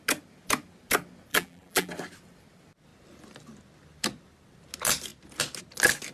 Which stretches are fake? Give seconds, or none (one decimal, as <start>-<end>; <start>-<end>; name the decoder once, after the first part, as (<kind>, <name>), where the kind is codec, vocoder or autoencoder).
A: 1.3-1.9 (vocoder, BigVGAN v2)